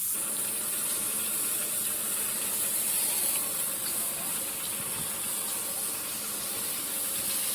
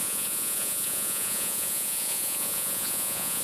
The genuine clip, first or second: first